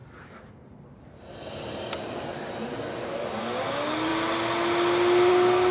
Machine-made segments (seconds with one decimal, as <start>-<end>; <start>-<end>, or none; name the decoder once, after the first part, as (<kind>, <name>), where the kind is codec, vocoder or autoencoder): 3.4-4.1 (codec, DAC); 5.3-5.7